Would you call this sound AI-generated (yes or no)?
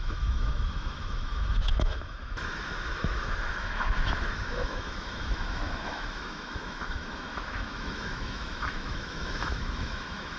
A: yes